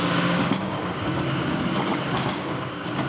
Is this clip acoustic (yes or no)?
no